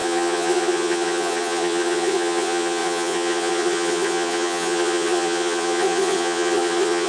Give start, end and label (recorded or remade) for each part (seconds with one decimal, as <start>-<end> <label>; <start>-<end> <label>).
0.0-7.1 remade